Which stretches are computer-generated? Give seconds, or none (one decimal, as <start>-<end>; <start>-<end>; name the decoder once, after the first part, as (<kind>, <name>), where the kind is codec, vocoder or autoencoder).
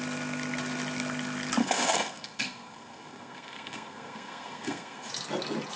1.6-5.1 (codec, SNAC)